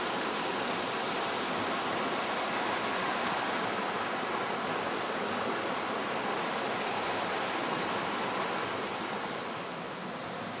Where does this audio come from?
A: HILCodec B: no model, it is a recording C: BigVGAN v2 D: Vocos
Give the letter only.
B